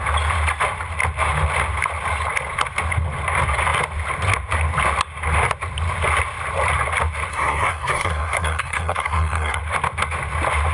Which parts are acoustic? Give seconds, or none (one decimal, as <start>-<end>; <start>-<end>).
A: 0.0-7.3; 9.6-10.7

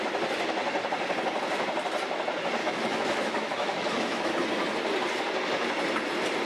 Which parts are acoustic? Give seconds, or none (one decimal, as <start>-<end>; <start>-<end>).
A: 0.0-2.6; 4.3-6.5

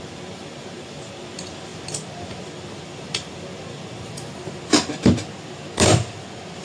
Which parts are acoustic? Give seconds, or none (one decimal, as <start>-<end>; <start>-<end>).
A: 0.0-6.6

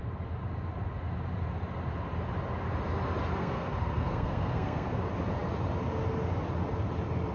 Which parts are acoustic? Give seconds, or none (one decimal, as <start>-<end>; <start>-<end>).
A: 0.0-3.4; 5.0-7.3

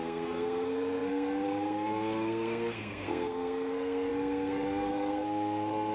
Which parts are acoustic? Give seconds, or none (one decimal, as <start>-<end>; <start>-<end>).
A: none

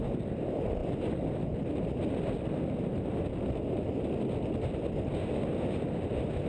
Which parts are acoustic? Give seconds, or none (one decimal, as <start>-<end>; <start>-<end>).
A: 0.0-6.5

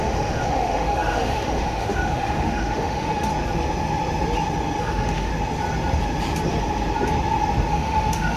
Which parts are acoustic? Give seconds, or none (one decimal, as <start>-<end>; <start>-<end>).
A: 3.3-4.8; 5.3-7.7